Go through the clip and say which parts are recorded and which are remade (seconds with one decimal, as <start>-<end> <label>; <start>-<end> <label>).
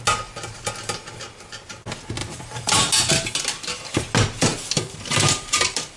0.0-2.2 recorded; 2.2-3.1 remade; 3.1-4.5 recorded; 4.5-6.0 remade